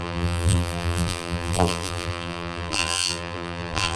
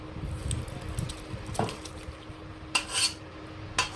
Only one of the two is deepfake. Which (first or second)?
first